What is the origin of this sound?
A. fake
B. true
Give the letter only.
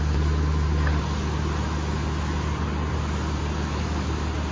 B